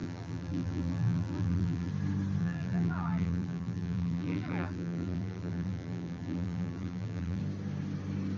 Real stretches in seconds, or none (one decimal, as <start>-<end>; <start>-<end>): 1.9-2.4; 7.4-8.4